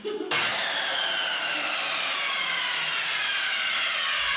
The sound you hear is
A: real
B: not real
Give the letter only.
A